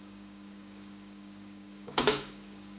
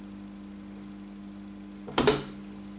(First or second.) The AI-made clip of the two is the first